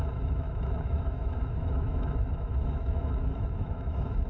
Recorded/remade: remade